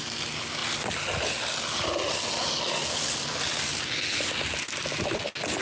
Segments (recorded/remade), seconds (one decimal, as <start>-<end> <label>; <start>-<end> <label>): 0.0-5.6 recorded